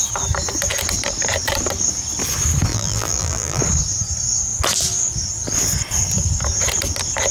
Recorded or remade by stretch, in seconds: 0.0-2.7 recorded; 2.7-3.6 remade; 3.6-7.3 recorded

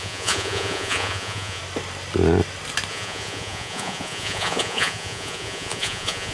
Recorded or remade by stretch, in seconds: 0.0-1.6 remade; 1.6-2.9 recorded; 2.9-6.3 remade

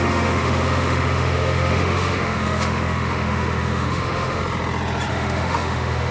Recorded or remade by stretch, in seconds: 0.0-4.4 remade; 4.4-5.1 recorded; 5.1-6.1 remade

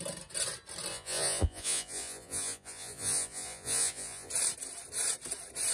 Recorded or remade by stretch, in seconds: 0.0-0.9 recorded; 0.9-4.3 remade; 4.3-5.7 recorded

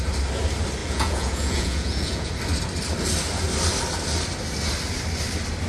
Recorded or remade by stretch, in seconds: 0.0-0.8 recorded; 0.8-2.3 remade; 2.3-5.7 recorded

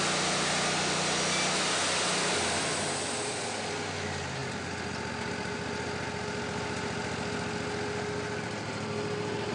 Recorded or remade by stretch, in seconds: 0.0-9.5 recorded

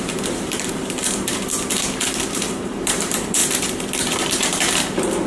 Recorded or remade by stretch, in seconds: 0.0-3.4 remade; 3.4-4.0 recorded; 4.0-5.3 remade